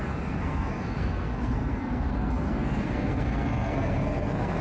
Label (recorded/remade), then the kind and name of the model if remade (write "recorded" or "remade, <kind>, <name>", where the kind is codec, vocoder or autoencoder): remade, codec, SNAC